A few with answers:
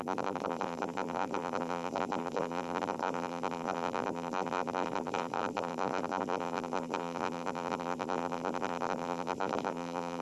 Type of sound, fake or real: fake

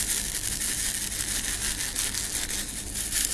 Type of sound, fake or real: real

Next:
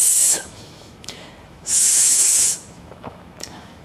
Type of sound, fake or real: fake